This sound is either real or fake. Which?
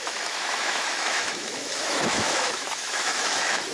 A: fake